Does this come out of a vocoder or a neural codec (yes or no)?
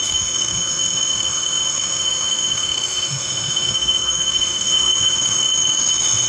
yes